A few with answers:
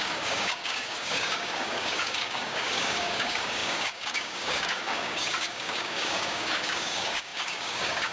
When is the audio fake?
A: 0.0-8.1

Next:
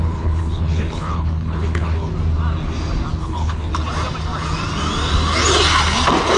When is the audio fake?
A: 0.0-2.1; 3.2-3.7

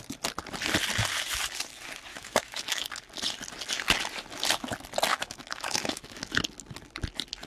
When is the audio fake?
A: 2.1-2.9; 5.1-6.4

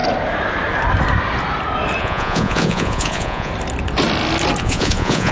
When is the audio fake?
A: 2.0-3.5; 4.6-5.3